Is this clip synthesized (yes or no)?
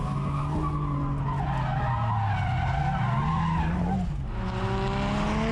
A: no